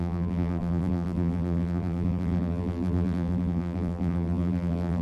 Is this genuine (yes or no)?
no